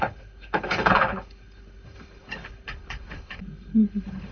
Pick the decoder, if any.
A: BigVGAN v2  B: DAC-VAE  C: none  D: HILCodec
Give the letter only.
D